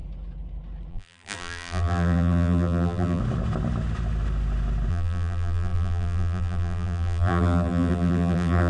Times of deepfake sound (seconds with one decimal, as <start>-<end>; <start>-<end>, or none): 0.9-3.2; 4.9-8.7